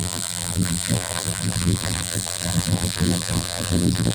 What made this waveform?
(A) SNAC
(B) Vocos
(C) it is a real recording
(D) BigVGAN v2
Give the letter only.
D